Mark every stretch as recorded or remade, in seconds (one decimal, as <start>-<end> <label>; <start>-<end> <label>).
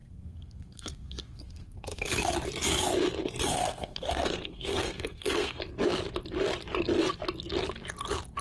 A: 0.0-2.1 remade; 2.1-3.5 recorded; 3.5-5.6 remade; 5.6-8.4 recorded